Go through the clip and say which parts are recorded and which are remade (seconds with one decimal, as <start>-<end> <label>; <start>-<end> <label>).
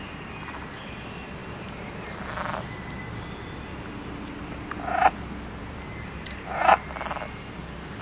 0.0-1.4 recorded; 1.4-2.7 remade; 2.7-3.7 recorded; 3.7-5.8 remade; 5.8-8.0 recorded